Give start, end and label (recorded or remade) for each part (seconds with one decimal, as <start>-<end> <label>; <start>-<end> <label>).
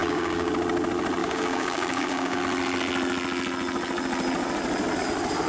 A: 0.0-0.5 remade; 0.5-1.2 recorded; 1.2-2.4 remade; 2.4-5.5 recorded